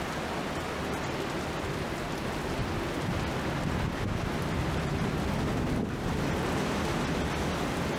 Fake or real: real